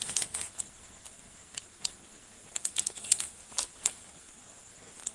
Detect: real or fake fake